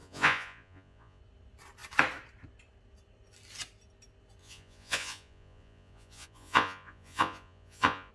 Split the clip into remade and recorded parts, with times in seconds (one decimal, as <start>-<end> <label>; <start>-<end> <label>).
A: 0.0-1.2 remade; 1.2-4.4 recorded; 4.4-8.1 remade